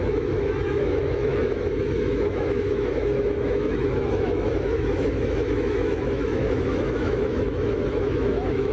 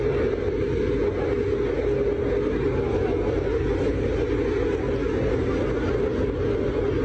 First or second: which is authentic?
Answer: second